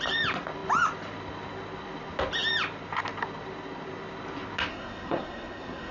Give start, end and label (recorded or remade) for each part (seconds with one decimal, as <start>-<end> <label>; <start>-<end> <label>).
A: 0.0-4.7 recorded; 4.7-5.9 remade